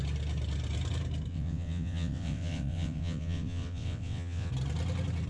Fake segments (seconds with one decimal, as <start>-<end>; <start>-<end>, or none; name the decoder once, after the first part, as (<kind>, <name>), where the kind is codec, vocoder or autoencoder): 1.3-4.5 (vocoder, WaveNeXt)